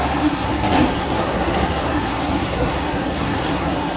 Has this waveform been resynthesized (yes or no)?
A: yes